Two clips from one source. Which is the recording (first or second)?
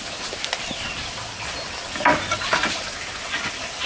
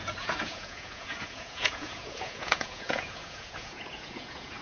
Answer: first